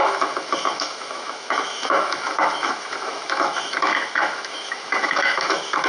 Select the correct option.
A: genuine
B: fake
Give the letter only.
B